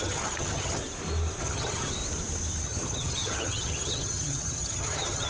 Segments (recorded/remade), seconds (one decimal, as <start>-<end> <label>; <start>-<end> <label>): 0.0-0.8 remade; 0.8-1.4 recorded; 1.4-2.0 remade; 2.0-2.6 recorded; 2.6-5.3 remade